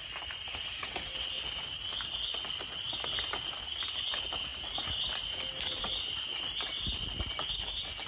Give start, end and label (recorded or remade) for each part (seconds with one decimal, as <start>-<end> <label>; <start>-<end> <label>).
0.0-8.1 recorded

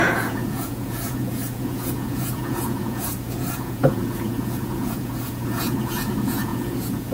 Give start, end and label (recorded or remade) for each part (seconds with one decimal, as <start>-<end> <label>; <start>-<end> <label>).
0.0-7.1 remade

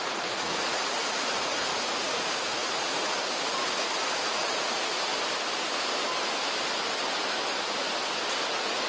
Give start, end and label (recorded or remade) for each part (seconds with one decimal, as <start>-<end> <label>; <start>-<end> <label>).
0.0-5.1 remade; 5.1-8.5 recorded; 8.5-8.9 remade

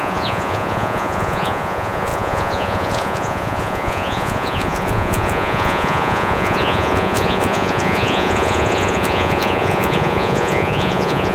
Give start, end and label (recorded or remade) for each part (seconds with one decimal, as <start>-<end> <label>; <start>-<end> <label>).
0.0-11.3 remade

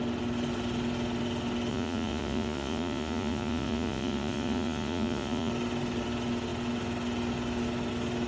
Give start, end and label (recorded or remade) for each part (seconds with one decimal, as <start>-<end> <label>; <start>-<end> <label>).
0.0-1.7 recorded; 1.7-5.5 remade; 5.5-8.3 recorded

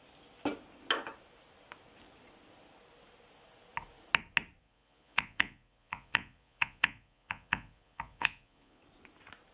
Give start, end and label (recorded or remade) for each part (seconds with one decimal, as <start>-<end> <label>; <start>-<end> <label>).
0.0-4.6 recorded; 4.6-8.8 remade; 8.8-9.5 recorded